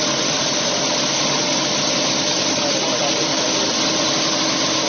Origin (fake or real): real